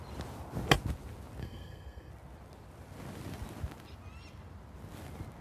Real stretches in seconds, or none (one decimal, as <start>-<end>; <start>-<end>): 0.0-1.4; 2.1-5.4